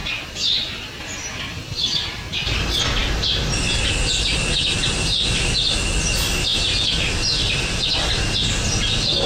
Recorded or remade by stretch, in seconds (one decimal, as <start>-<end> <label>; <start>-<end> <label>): 0.0-2.2 remade; 2.2-9.3 recorded